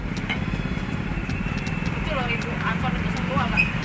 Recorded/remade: recorded